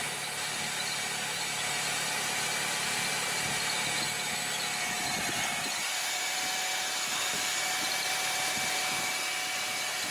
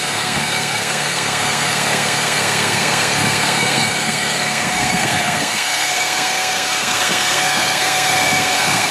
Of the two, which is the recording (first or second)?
first